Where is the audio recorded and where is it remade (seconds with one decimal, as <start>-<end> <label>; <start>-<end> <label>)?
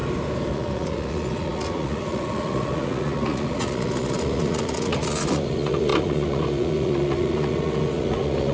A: 0.0-0.5 recorded; 0.5-8.5 remade